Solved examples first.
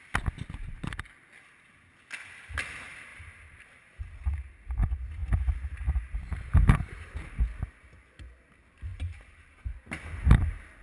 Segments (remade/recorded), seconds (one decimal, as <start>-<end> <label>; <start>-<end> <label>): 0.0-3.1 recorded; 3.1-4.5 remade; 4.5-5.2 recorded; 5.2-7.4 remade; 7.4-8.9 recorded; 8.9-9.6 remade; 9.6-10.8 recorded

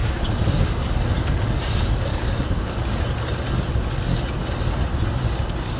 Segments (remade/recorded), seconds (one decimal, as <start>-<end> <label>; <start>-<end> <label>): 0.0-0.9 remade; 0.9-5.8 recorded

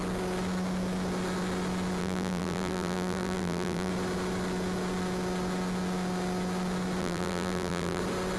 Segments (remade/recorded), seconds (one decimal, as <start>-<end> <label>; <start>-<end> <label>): 0.0-2.0 recorded; 2.0-3.9 remade; 3.9-7.0 recorded; 7.0-8.0 remade; 8.0-8.4 recorded

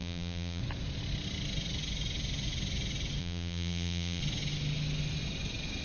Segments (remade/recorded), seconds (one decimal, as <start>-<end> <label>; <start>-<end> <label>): 0.0-0.6 remade; 0.6-3.2 recorded; 3.2-4.2 remade; 4.2-5.8 recorded

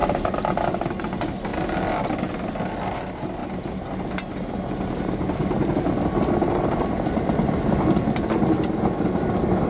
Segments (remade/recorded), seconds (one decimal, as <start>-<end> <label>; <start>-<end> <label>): 0.0-1.0 remade; 1.0-3.4 recorded; 3.4-4.1 remade; 4.1-9.7 recorded

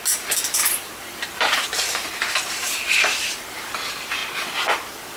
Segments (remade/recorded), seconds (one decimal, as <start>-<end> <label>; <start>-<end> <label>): 0.0-0.6 recorded; 0.6-3.7 remade; 3.7-5.2 recorded

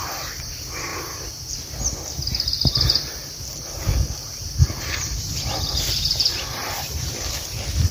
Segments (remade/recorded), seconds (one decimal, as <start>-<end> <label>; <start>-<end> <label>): 0.0-0.9 remade; 0.9-3.3 recorded; 3.3-7.9 remade

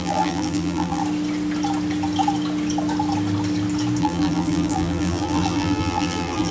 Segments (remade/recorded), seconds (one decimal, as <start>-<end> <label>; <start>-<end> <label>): 0.0-1.0 remade; 1.0-4.0 recorded; 4.0-6.5 remade